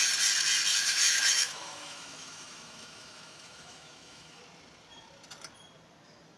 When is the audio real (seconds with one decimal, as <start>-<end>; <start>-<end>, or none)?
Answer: 0.0-0.7; 4.4-6.4